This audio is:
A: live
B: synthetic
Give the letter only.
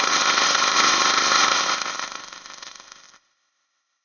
B